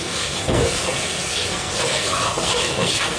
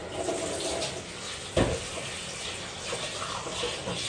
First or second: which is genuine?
second